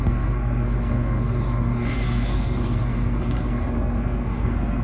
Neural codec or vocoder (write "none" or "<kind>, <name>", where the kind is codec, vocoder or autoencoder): codec, SNAC